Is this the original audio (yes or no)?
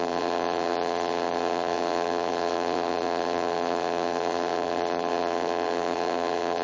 no